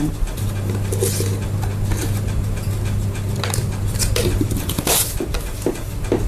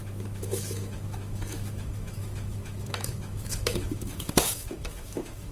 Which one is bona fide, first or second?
first